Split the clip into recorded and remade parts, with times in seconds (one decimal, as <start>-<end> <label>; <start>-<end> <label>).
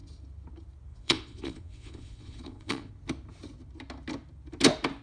0.0-0.9 recorded; 0.9-2.9 remade; 2.9-5.0 recorded